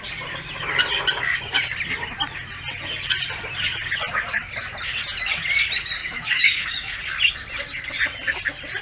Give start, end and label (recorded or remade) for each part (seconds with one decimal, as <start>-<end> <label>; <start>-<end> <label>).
0.0-6.0 recorded; 6.0-6.9 remade; 6.9-8.8 recorded